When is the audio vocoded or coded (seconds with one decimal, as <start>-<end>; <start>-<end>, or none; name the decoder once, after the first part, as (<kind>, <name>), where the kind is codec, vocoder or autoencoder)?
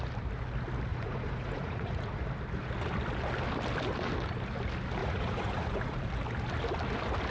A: 0.9-2.2 (vocoder, Vocos); 5.0-6.0